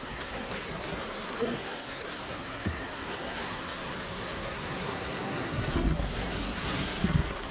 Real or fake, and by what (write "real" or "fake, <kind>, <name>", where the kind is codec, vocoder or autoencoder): fake, codec, SNAC